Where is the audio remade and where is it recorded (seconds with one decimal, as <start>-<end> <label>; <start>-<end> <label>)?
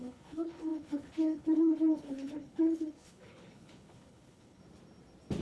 0.0-4.6 remade; 4.6-5.4 recorded